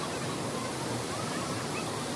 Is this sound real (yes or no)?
yes